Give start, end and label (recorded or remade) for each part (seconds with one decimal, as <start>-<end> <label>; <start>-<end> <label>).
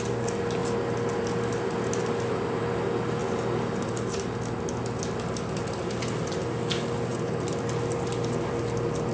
0.0-9.1 recorded